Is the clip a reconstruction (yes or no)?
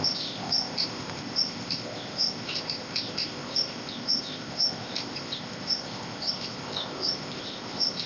yes